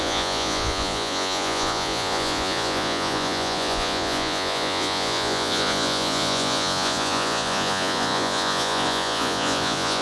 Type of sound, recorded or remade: remade